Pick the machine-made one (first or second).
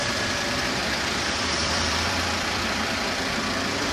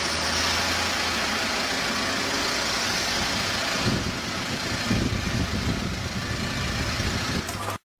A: first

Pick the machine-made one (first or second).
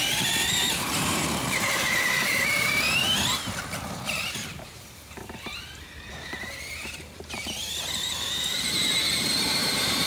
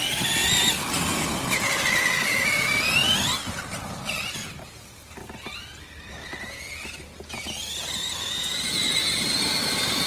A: first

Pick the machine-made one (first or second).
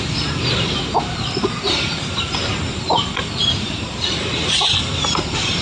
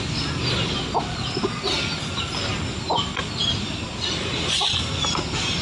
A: first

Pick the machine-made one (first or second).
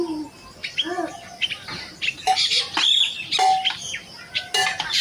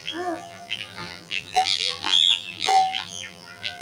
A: second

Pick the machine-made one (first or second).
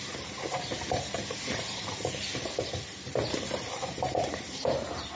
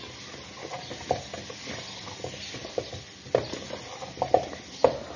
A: first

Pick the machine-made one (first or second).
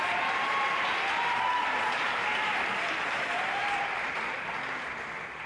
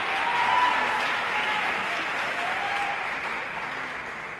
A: first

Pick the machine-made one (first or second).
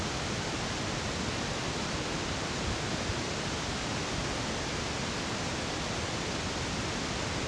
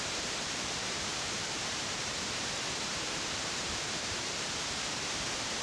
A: second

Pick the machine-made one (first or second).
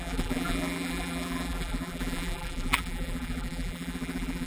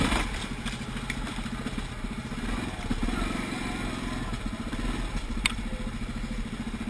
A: first